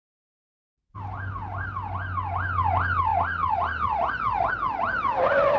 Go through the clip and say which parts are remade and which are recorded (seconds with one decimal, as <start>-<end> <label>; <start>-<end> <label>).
0.0-5.6 recorded